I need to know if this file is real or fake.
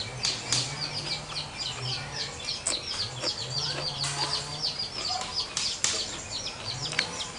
real